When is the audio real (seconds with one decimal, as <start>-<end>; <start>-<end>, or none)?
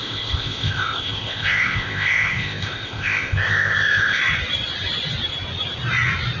4.2-6.4